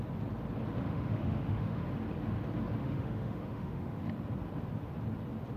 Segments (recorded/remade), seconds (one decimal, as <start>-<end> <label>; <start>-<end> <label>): 0.0-0.8 recorded; 0.8-1.9 remade; 1.9-2.8 recorded; 2.8-4.1 remade; 4.1-5.6 recorded